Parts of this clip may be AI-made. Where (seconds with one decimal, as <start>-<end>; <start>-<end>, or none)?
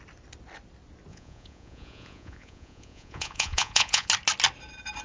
1.1-4.1